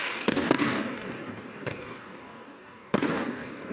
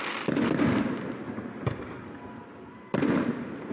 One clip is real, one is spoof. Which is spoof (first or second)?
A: first